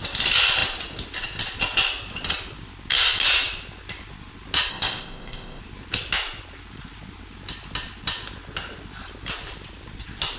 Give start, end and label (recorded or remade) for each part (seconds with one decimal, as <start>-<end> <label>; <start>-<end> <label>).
0.0-4.7 recorded; 4.7-5.6 remade; 5.6-10.4 recorded